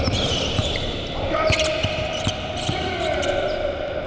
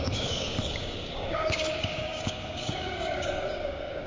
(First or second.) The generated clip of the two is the second